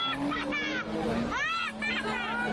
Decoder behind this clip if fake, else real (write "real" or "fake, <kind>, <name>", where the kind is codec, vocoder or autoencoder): real